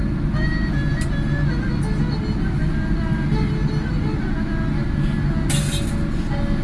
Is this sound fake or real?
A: real